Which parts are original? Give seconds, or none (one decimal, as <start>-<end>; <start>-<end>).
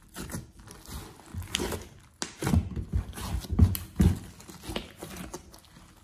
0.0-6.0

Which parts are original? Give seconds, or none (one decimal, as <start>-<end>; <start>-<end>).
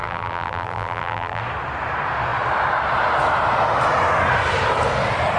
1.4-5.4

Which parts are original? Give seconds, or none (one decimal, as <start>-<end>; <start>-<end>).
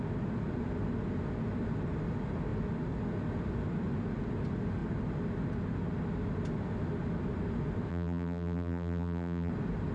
0.0-7.9; 9.5-9.9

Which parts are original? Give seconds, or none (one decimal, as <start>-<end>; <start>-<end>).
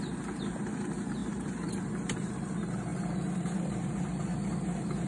0.0-1.2; 2.5-5.1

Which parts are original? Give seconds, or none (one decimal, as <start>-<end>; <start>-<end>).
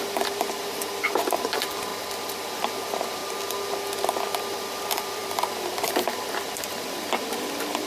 1.9-2.7; 3.2-4.4